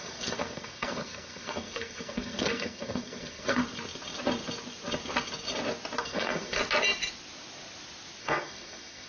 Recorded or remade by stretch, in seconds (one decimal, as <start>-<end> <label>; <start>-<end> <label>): 0.0-3.6 remade; 3.6-6.0 recorded; 6.0-6.6 remade; 6.6-8.2 recorded; 8.2-9.1 remade